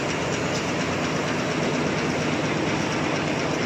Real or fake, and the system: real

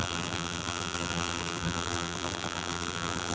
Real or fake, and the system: fake, vocoder, BigVGAN v2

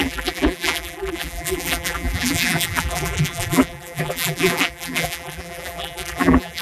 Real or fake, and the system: fake, vocoder, BigVGAN v2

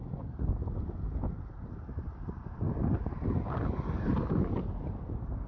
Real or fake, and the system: real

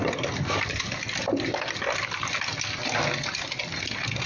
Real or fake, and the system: real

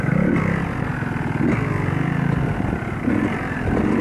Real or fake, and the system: real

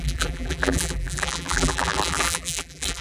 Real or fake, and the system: fake, vocoder, BigVGAN v2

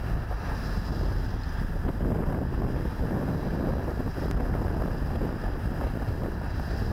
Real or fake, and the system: real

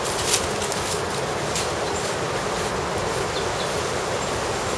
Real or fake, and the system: real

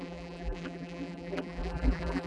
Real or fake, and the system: fake, vocoder, BigVGAN v2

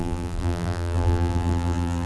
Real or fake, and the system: fake, vocoder, BigVGAN v2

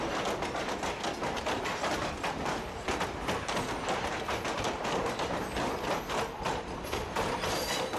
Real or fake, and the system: real